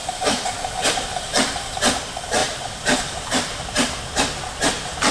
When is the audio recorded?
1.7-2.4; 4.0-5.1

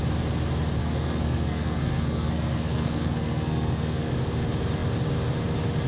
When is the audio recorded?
0.0-0.8; 4.1-5.9